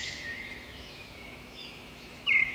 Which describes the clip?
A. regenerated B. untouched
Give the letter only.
A